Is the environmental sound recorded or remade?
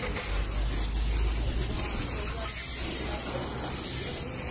recorded